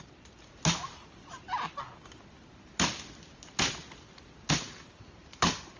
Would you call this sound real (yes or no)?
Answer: yes